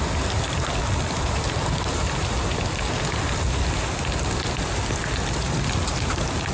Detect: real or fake real